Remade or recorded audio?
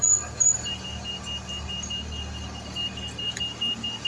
recorded